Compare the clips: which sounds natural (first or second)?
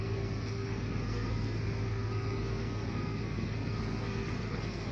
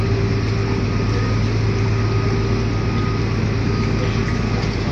second